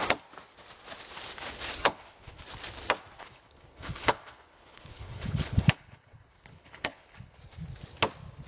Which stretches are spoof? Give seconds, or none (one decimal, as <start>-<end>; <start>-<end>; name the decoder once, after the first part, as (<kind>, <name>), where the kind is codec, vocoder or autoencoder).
1.8-2.4 (codec, HILCodec); 3.2-7.4